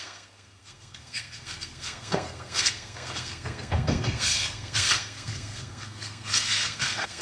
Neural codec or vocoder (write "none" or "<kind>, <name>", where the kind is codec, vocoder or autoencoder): codec, SNAC